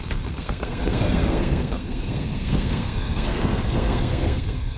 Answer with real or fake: fake